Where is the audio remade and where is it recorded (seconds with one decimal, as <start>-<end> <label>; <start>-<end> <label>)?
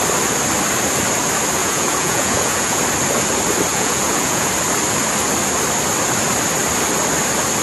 0.0-1.6 recorded; 1.6-2.8 remade; 2.8-3.7 recorded; 3.7-4.5 remade; 4.5-7.6 recorded